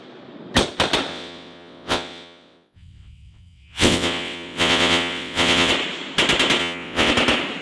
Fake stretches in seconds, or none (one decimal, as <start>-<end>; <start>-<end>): 1.1-5.7; 6.6-7.1